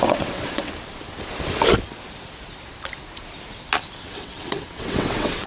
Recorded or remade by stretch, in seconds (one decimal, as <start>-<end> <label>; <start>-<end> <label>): 0.0-0.7 remade; 0.7-4.0 recorded; 4.0-5.5 remade